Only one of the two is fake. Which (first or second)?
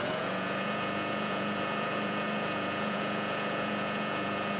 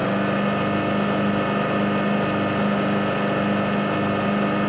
first